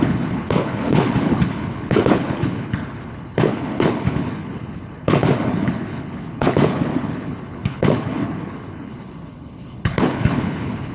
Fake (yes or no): yes